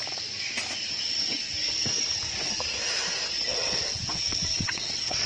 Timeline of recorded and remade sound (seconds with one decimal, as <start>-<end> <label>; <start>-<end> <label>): 0.0-3.5 recorded; 3.5-5.3 remade